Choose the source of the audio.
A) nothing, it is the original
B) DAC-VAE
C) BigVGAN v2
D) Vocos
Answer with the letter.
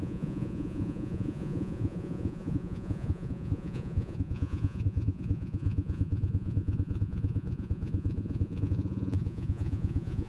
D